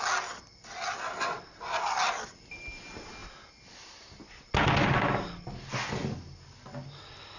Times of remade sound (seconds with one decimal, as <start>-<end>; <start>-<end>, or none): none